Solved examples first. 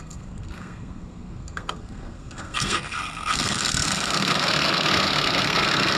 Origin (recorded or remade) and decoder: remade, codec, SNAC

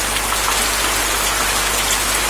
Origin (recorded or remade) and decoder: recorded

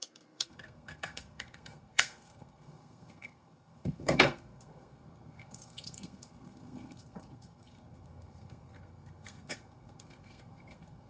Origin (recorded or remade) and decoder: remade, codec, SNAC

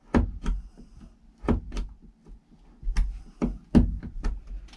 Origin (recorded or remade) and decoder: recorded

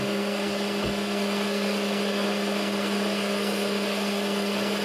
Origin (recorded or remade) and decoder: remade, codec, SNAC